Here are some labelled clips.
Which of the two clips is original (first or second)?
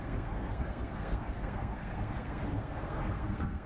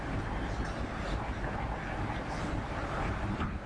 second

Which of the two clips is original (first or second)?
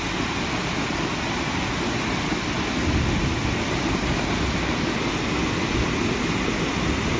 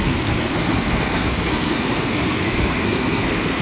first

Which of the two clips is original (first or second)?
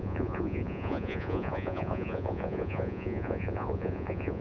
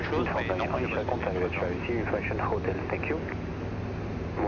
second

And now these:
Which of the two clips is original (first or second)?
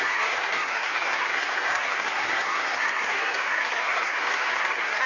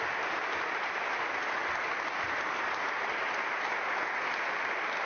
second